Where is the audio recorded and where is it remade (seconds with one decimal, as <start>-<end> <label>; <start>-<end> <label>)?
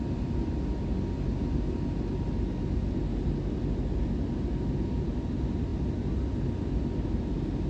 0.0-7.7 recorded